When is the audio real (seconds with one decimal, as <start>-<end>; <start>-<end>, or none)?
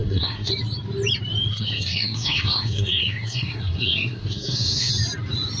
0.5-1.5; 4.9-5.6